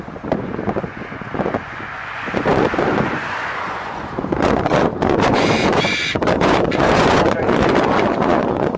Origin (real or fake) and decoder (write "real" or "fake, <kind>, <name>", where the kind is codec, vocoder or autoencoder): fake, vocoder, Vocos